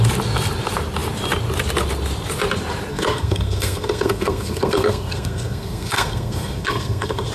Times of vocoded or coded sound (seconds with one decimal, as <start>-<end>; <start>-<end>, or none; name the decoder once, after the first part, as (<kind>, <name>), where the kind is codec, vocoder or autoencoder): 2.9-7.3 (codec, SNAC)